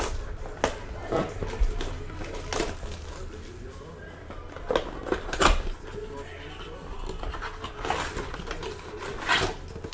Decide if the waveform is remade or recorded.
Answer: recorded